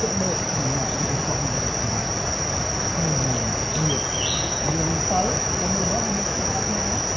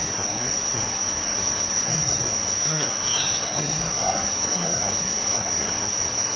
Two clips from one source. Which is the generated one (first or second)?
second